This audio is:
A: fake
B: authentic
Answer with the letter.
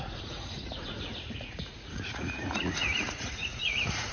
A